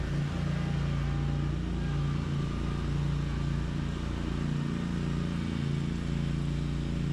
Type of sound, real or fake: real